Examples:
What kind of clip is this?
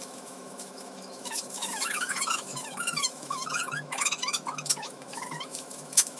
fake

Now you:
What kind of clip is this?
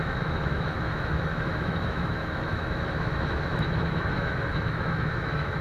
fake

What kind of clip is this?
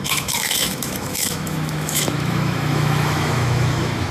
fake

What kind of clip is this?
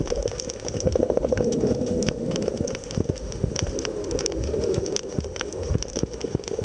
fake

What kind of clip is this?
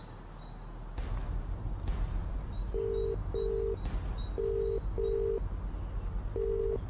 real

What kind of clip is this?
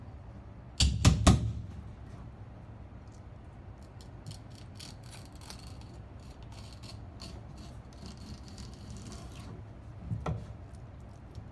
real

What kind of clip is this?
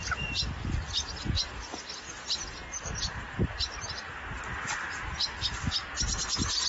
real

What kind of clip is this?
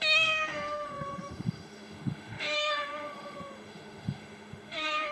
fake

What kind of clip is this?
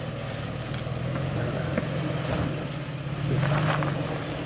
real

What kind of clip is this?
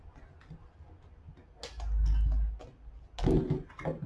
real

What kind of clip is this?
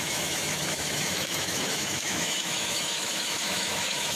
fake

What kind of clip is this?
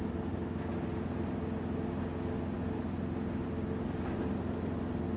real